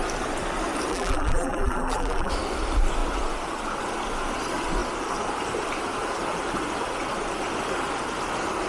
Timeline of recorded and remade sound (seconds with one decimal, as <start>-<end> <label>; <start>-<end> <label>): 0.0-0.9 recorded; 0.9-2.3 remade; 2.3-8.7 recorded